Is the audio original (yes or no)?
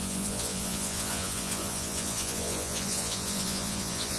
no